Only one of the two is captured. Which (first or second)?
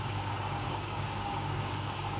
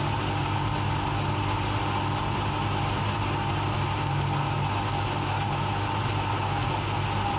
second